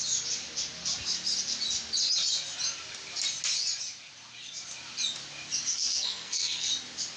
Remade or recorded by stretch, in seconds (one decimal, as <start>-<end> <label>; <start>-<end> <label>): 0.0-5.7 recorded; 5.7-6.7 remade; 6.7-7.2 recorded